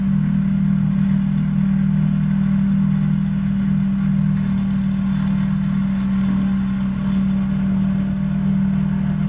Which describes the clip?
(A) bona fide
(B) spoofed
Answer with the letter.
A